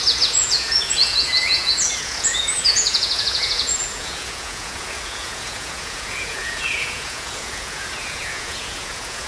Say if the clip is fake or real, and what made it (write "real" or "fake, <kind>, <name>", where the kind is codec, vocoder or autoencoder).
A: fake, vocoder, Vocos